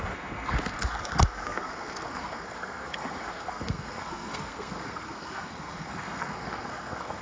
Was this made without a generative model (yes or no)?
no